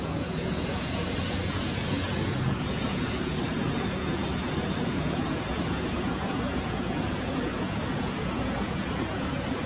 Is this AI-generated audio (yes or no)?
yes